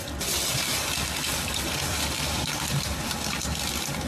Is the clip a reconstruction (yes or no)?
no